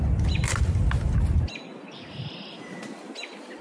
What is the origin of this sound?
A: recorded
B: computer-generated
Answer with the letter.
A